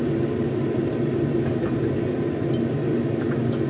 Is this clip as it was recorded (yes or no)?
yes